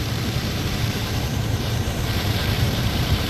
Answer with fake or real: fake